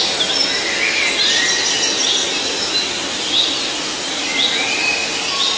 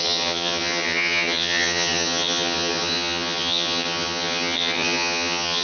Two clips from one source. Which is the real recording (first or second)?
first